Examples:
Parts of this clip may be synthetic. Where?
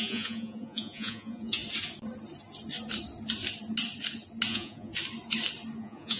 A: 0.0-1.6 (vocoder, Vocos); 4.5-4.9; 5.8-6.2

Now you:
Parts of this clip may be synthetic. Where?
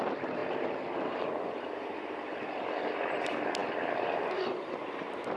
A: none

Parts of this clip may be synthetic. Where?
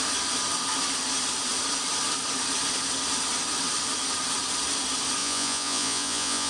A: 5.2-6.5 (vocoder, Vocos)